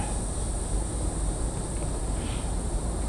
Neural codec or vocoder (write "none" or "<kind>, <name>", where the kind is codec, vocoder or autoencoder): vocoder, BigVGAN v2